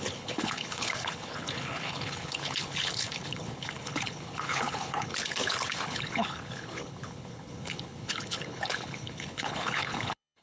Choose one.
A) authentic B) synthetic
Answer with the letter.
B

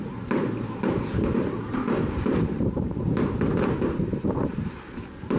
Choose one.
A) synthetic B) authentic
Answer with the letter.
A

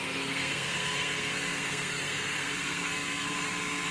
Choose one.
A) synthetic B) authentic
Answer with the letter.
A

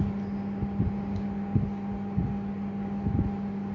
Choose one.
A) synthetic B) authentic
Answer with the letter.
B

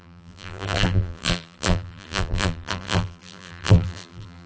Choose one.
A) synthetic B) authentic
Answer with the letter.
A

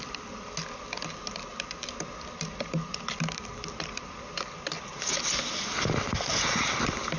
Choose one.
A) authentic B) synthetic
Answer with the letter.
A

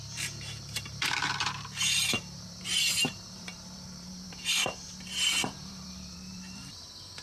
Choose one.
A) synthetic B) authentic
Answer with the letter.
A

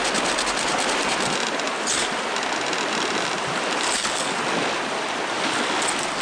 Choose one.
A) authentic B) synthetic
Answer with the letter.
A